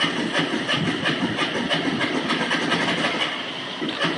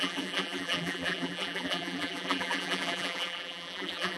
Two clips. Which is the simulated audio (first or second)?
second